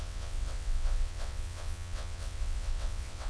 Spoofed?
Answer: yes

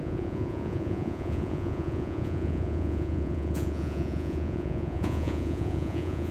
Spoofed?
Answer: yes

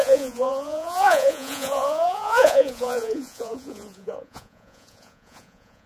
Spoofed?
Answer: yes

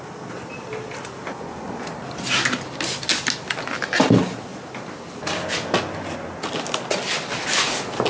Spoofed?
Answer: no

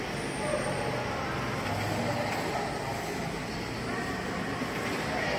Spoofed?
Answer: no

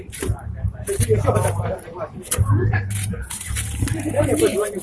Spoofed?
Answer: yes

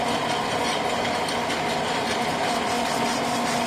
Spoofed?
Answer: no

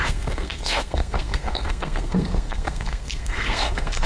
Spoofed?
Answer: yes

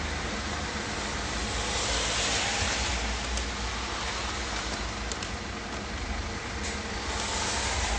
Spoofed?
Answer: no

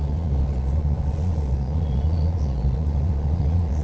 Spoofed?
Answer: yes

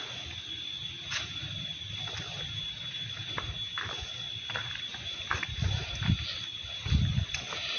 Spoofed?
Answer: no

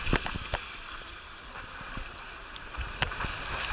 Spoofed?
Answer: no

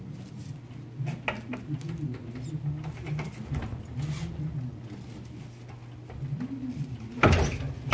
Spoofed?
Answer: no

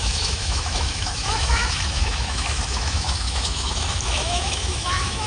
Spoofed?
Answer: yes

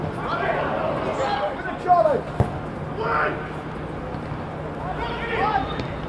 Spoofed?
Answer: no